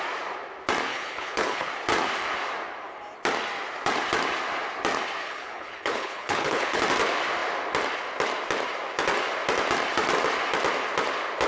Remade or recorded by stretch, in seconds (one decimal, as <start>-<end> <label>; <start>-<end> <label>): 0.0-0.9 recorded; 0.9-1.7 remade; 1.7-5.2 recorded; 5.2-6.8 remade; 6.8-11.5 recorded